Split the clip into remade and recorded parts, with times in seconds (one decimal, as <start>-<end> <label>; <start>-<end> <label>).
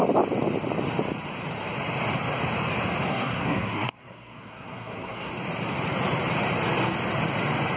0.0-3.1 recorded; 3.1-5.3 remade; 5.3-7.8 recorded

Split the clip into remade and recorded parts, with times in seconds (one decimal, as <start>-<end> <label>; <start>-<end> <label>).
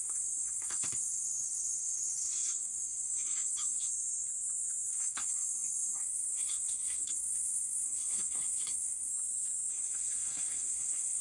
0.0-3.9 remade; 3.9-4.9 recorded; 4.9-9.1 remade; 9.1-9.7 recorded; 9.7-11.2 remade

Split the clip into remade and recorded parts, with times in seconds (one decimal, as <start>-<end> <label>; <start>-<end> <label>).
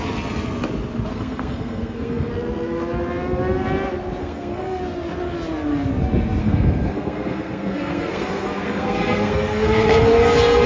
0.0-1.1 recorded; 1.1-2.3 remade; 2.3-4.2 recorded; 4.2-4.8 remade; 4.8-6.4 recorded; 6.4-10.0 remade; 10.0-10.7 recorded